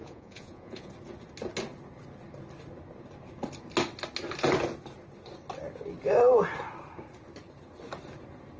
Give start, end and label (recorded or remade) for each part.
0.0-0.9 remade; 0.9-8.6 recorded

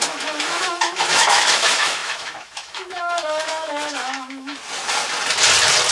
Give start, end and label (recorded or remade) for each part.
0.0-4.6 remade; 4.6-5.9 recorded

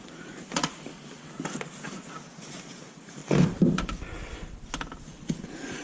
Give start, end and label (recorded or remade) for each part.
0.0-0.9 remade; 0.9-2.8 recorded; 2.8-3.2 remade; 3.2-5.0 recorded; 5.0-5.8 remade

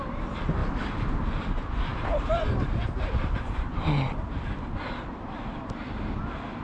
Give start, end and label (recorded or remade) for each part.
0.0-1.9 recorded; 1.9-5.9 remade; 5.9-6.6 recorded

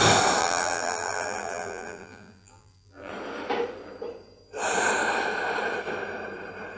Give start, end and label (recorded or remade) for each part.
0.0-0.4 recorded; 0.4-3.1 remade; 3.1-6.8 recorded

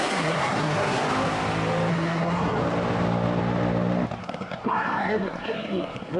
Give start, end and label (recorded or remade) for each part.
0.0-1.0 remade; 1.0-1.9 recorded; 1.9-2.6 remade; 2.6-4.2 recorded; 4.2-6.2 remade